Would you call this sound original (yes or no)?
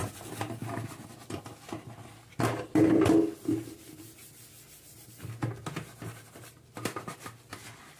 yes